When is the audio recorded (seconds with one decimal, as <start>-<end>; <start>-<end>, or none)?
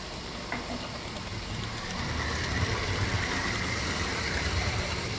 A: 0.0-5.2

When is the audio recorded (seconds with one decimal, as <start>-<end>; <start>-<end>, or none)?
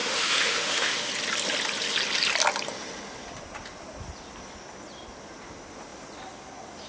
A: 1.1-6.9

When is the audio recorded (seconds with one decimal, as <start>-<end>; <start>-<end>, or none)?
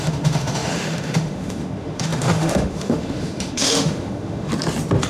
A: 4.5-5.1